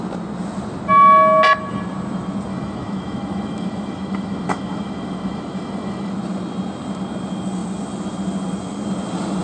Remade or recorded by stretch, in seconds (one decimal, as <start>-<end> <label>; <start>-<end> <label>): 0.0-2.5 recorded; 2.5-6.1 remade; 6.1-9.4 recorded